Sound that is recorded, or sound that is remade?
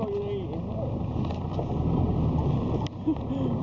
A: recorded